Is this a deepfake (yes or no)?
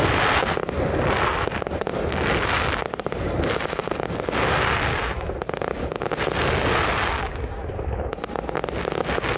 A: no